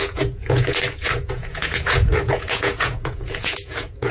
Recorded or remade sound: remade